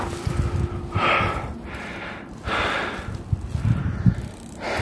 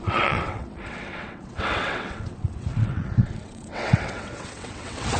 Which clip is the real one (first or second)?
first